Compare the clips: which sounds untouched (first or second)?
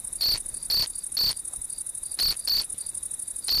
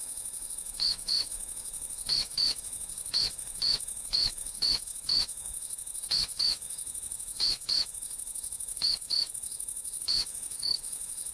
first